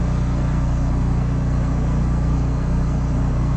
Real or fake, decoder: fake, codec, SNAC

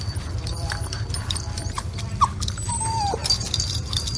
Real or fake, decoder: fake, vocoder, BigVGAN v2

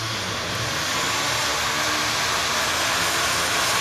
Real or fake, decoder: real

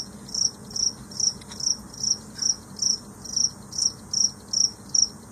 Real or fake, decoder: real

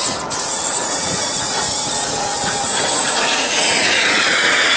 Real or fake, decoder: fake, vocoder, Vocos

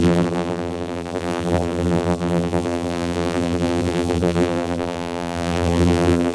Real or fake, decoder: fake, vocoder, BigVGAN v2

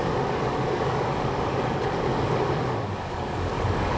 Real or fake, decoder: fake, codec, DAC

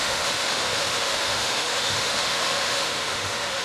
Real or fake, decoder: fake, autoencoder, DAC-VAE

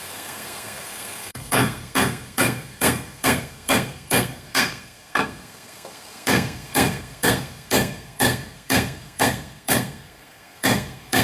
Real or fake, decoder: fake, codec, SNAC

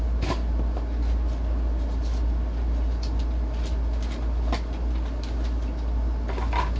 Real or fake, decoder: real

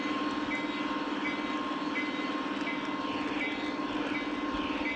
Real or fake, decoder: real